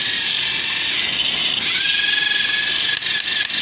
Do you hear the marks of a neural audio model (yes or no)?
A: no